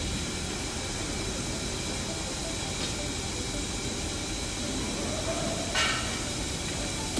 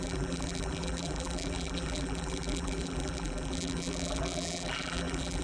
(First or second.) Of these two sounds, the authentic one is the first